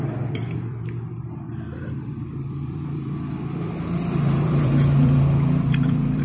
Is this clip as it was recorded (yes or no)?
no